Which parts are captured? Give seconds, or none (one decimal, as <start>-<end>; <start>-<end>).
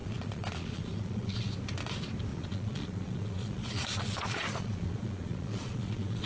1.5-2.3